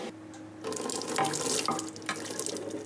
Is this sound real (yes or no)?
yes